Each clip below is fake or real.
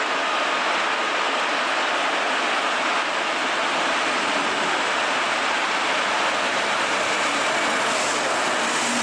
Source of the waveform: real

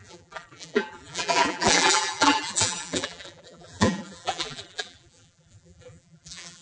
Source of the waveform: fake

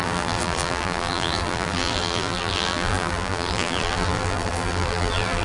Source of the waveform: fake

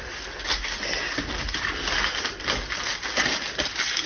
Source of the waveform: real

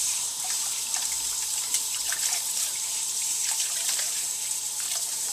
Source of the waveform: fake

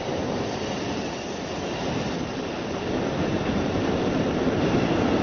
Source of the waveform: fake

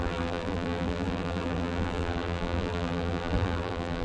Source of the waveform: fake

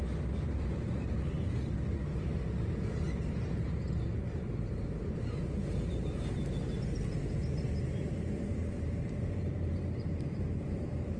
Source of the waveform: fake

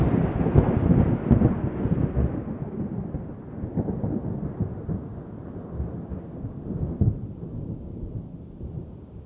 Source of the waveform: real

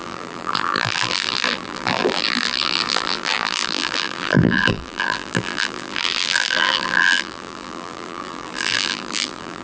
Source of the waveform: fake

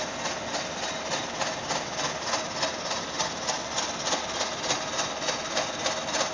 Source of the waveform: real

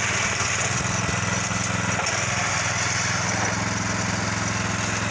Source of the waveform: real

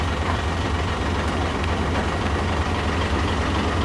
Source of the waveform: fake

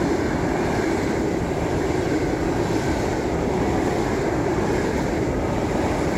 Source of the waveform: fake